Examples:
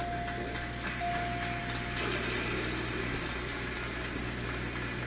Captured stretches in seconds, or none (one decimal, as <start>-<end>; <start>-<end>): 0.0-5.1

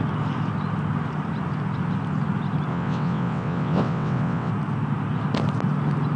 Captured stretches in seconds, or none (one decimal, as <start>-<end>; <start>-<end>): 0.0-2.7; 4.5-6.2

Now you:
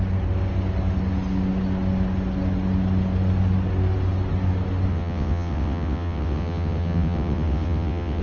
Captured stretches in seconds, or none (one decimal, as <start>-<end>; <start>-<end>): 0.0-4.9

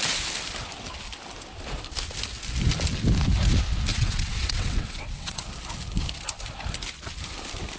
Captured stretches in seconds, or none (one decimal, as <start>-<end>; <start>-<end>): 0.0-3.9; 5.4-7.8